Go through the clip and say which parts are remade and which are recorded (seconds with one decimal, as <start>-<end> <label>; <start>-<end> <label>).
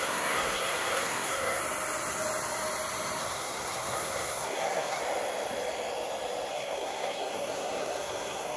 0.0-1.6 remade; 1.6-3.2 recorded; 3.2-5.0 remade; 5.0-6.5 recorded; 6.5-8.6 remade